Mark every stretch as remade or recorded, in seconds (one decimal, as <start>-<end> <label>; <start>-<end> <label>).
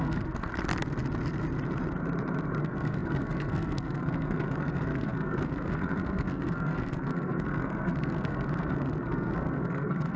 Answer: 0.0-0.5 remade; 0.5-2.6 recorded; 2.6-10.2 remade